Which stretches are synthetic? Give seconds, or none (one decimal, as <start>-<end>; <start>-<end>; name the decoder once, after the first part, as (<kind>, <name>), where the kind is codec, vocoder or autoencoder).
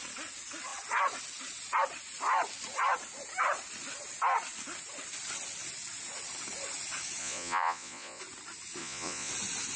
7.2-8.2 (vocoder, Vocos); 8.8-9.3